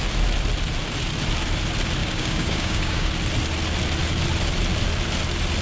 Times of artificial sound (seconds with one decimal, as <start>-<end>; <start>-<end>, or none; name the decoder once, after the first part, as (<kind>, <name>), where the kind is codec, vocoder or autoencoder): 2.0-3.1 (codec, DAC)